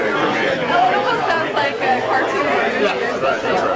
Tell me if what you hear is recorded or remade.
remade